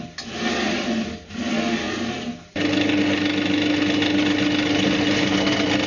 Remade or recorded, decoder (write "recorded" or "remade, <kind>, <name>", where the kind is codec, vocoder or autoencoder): recorded